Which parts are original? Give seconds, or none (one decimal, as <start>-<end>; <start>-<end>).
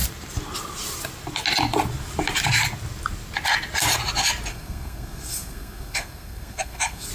0.0-4.5